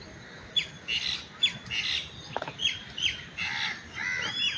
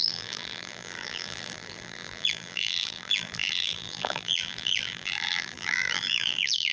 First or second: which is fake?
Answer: second